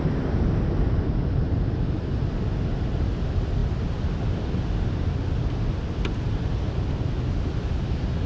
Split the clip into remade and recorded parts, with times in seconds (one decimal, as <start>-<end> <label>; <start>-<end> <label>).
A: 0.0-8.3 recorded